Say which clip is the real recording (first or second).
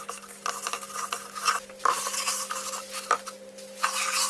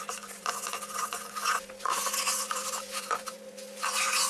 first